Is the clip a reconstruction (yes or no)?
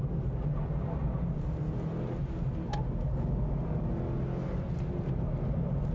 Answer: no